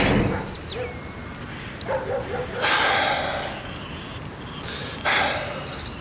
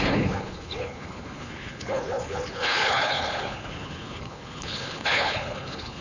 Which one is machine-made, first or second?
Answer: second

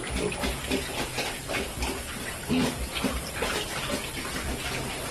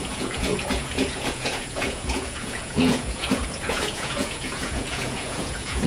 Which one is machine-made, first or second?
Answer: second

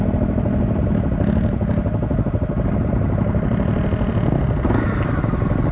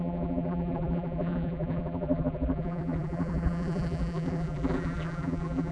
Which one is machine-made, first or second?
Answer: second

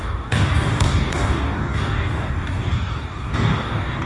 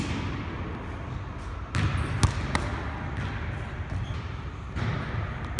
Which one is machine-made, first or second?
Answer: first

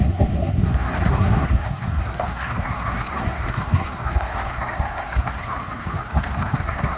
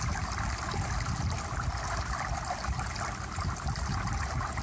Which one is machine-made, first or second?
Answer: first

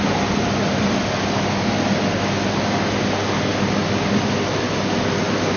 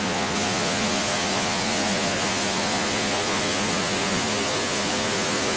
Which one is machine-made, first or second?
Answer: second